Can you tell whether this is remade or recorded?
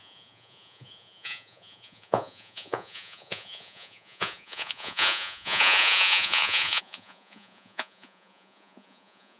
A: remade